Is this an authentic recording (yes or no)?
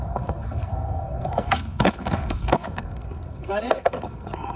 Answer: no